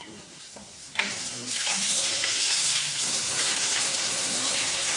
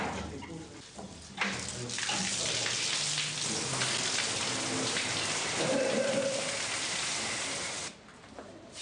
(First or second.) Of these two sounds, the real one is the second